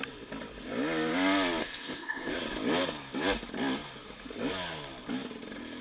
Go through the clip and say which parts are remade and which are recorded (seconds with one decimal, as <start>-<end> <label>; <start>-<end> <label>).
0.0-1.6 recorded; 1.6-2.3 remade; 2.3-5.8 recorded